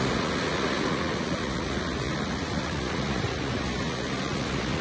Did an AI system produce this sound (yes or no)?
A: yes